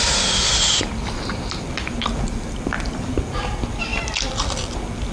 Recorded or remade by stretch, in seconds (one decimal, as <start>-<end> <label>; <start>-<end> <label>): 0.0-5.1 recorded